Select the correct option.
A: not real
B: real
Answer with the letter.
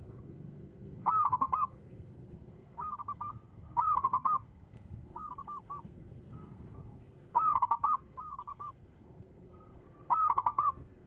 A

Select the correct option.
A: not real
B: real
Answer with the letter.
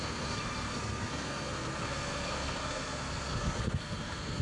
A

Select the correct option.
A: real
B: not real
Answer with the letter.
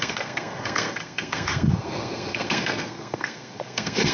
B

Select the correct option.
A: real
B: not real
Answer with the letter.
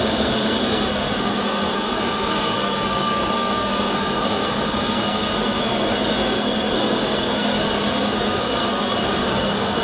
B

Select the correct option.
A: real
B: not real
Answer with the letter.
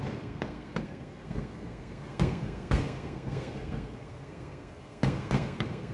B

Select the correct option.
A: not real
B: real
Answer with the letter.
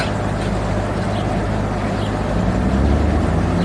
B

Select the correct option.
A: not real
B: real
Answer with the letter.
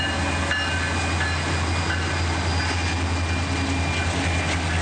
B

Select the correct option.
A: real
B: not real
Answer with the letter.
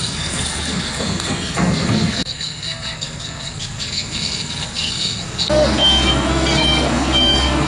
B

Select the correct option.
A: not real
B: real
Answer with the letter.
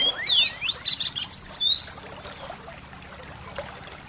B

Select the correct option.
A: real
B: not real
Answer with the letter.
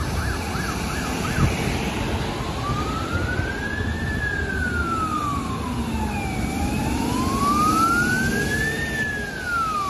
A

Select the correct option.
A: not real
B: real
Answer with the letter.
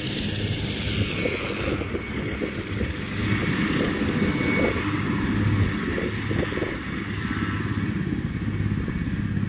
B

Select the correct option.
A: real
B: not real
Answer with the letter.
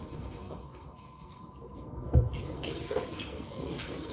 B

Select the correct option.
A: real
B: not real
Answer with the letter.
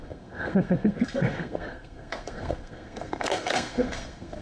B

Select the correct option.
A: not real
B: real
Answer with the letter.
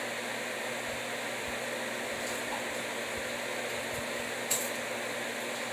B